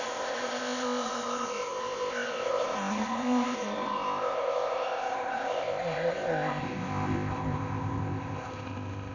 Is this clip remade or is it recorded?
remade